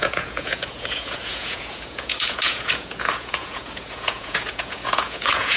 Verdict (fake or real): fake